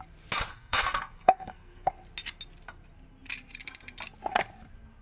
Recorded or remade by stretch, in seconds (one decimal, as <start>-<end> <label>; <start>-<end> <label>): 0.0-0.5 recorded; 0.5-1.9 remade; 1.9-5.0 recorded